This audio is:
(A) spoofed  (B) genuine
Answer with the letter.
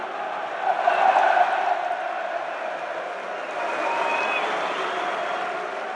B